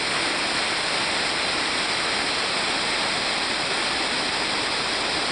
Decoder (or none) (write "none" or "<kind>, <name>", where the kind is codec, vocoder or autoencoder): none